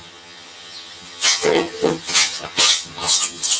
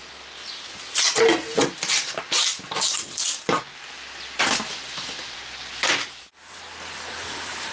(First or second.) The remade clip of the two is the first